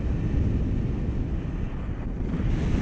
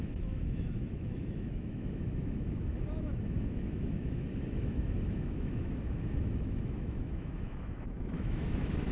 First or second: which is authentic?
first